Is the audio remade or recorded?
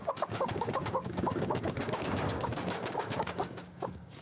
remade